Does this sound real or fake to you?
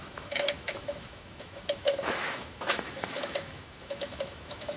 fake